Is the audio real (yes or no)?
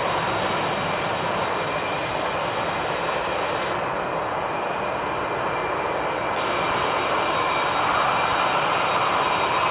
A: yes